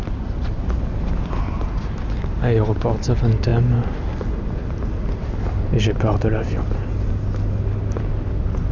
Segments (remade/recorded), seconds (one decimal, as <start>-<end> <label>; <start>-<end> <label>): 0.0-8.7 recorded